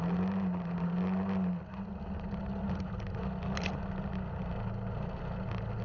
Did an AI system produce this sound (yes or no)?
no